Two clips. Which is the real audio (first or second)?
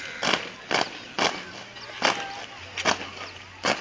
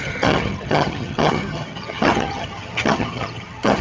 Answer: first